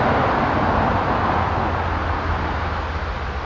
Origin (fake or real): real